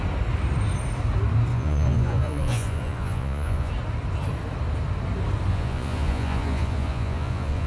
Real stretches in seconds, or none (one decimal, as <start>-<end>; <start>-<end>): 0.0-1.5; 3.7-5.5